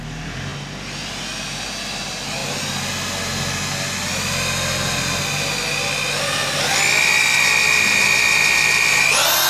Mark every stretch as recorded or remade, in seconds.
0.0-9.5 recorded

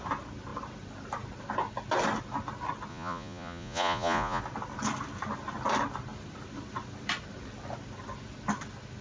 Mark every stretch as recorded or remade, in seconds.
0.0-2.9 recorded; 2.9-4.4 remade; 4.4-9.0 recorded

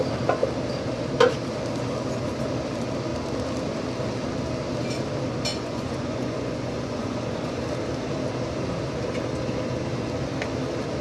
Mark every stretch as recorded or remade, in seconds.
0.0-5.5 recorded; 5.5-7.6 remade; 7.6-11.0 recorded